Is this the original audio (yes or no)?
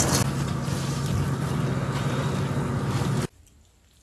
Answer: yes